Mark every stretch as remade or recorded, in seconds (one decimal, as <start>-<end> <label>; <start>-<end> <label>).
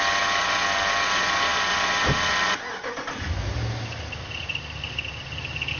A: 0.0-5.8 recorded